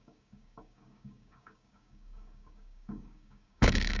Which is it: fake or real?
fake